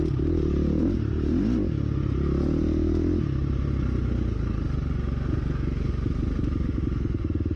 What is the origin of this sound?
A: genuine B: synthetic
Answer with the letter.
A